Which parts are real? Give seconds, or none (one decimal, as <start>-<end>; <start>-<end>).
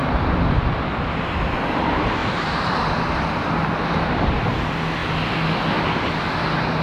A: 0.7-2.2; 2.8-6.8